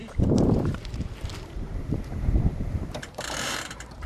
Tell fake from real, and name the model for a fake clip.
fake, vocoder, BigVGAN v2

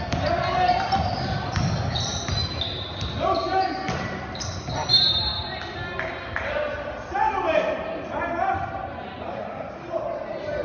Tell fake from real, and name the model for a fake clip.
real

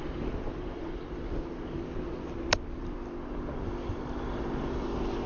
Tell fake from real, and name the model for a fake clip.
real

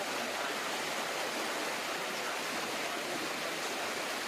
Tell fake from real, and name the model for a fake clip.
real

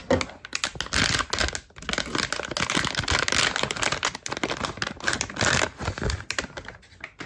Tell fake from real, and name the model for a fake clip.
real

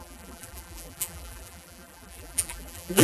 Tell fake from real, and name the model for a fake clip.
fake, vocoder, BigVGAN v2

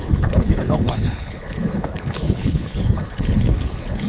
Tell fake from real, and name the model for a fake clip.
fake, codec, HILCodec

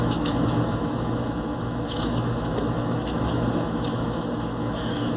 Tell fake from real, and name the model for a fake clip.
fake, autoencoder, DAC-VAE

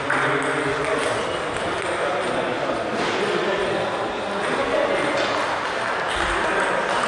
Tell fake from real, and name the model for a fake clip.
real